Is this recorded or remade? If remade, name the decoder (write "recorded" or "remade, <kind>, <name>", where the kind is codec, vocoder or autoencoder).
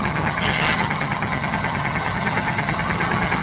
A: remade, vocoder, HiFi-GAN